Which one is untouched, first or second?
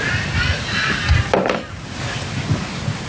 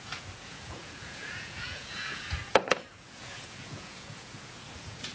first